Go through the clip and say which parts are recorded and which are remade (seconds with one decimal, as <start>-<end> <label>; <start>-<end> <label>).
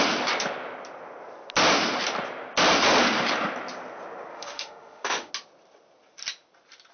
0.0-4.3 recorded; 4.3-5.3 remade; 5.3-6.9 recorded